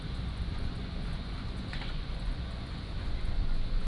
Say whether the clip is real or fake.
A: fake